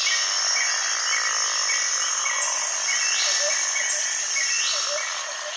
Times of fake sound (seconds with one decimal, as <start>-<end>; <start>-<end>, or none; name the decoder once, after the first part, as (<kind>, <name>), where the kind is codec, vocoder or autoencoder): none